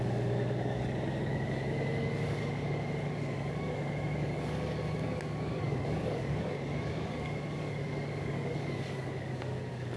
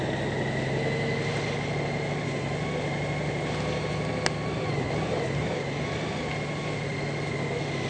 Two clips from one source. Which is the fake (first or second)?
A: first